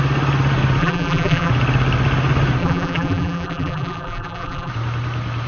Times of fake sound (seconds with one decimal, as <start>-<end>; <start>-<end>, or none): 0.8-1.5; 2.6-4.7